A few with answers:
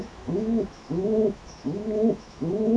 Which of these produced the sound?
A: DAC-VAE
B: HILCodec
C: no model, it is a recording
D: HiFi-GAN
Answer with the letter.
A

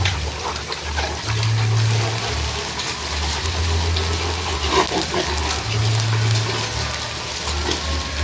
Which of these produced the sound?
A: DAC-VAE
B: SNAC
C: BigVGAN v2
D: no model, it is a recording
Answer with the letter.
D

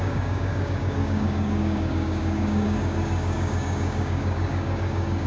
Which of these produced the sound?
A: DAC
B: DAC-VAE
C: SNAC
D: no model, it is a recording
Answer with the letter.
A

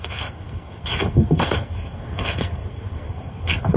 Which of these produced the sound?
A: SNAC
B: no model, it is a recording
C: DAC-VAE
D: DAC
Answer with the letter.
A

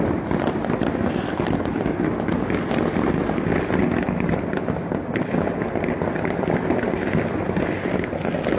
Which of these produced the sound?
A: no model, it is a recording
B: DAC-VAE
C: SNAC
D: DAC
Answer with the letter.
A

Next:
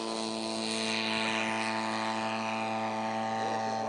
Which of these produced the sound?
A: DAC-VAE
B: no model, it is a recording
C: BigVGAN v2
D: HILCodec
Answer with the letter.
B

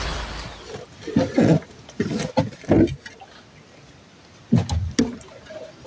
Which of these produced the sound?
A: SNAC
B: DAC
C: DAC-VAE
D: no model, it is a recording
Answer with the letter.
D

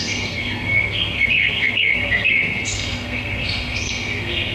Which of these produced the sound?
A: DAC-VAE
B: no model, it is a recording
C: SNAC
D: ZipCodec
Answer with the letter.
C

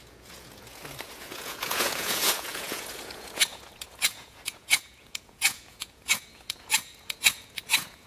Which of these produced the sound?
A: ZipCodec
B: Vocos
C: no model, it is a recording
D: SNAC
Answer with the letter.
B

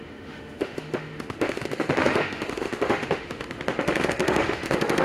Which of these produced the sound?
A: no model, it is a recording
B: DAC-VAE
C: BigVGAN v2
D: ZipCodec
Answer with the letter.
B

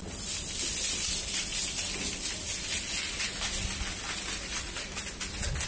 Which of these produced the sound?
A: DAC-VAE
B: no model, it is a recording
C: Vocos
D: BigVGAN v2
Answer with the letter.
B